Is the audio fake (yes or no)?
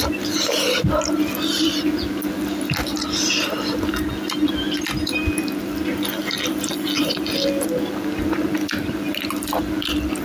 no